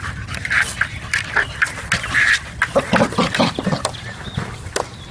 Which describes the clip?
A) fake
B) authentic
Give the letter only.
B